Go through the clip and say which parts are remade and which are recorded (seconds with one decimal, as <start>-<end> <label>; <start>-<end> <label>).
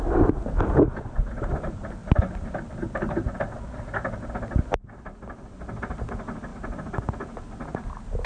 0.0-8.3 recorded